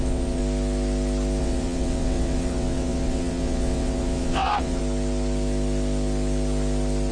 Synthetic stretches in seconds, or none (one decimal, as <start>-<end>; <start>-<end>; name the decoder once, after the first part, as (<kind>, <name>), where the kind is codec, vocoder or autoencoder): 0.0-0.4 (vocoder, WaveNeXt); 1.4-4.8